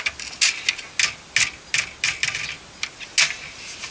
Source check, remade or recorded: recorded